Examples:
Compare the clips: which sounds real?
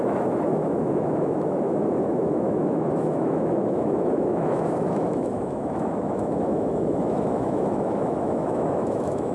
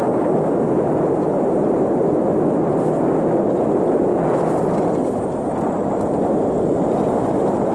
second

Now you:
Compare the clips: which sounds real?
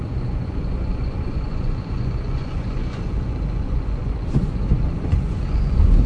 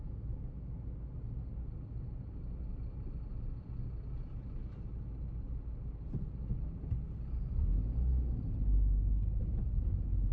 second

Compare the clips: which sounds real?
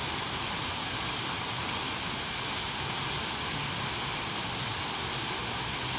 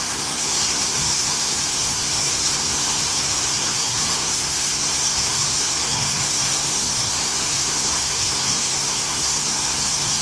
first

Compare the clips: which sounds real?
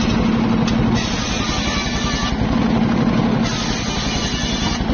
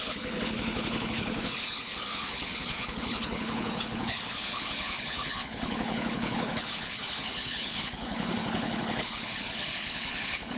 first